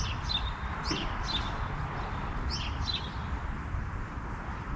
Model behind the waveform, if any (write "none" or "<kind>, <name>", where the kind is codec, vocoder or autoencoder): none